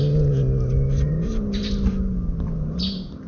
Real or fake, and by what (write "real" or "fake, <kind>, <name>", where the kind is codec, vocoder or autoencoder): real